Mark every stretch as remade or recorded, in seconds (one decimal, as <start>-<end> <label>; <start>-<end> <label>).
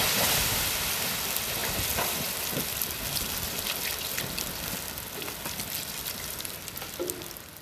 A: 0.0-7.6 recorded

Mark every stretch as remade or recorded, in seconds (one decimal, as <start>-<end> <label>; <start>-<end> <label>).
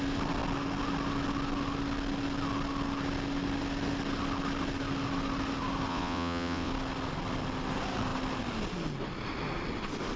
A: 0.0-5.9 recorded; 5.9-6.7 remade; 6.7-10.2 recorded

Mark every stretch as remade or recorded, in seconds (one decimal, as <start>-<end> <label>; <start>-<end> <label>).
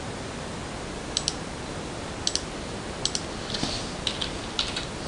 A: 0.0-5.1 recorded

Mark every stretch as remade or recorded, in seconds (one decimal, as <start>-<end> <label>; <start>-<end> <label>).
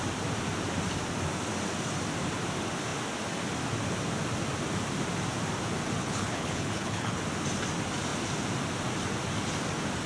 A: 0.0-6.0 recorded; 6.0-7.2 remade; 7.2-10.1 recorded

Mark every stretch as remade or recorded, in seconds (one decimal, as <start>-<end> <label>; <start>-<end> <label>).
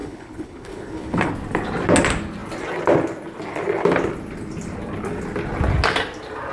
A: 0.0-1.3 remade; 1.3-6.5 recorded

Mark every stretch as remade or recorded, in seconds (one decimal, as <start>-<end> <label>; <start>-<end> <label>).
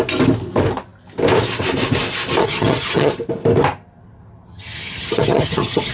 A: 0.0-2.4 recorded; 2.4-3.1 remade; 3.1-4.5 recorded; 4.5-5.9 remade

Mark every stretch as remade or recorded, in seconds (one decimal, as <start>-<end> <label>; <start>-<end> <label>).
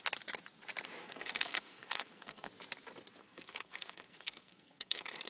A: 0.0-1.0 recorded; 1.0-2.5 remade; 2.5-3.2 recorded; 3.2-5.3 remade